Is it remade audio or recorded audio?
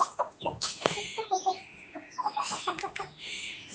remade